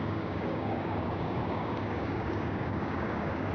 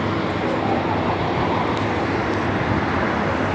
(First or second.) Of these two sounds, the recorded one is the second